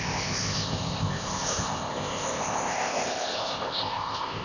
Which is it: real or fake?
fake